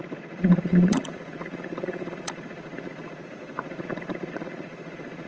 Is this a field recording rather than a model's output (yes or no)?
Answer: no